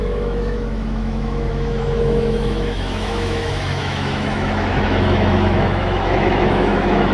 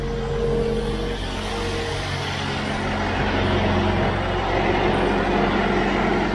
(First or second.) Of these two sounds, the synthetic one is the first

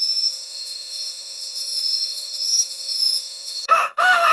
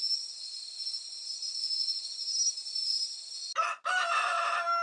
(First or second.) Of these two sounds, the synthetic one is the first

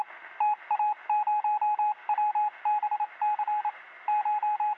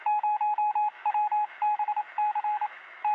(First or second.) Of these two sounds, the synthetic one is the second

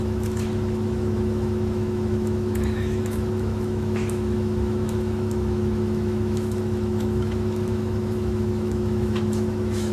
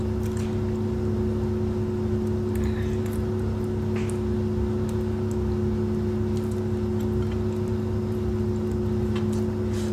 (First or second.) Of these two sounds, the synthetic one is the first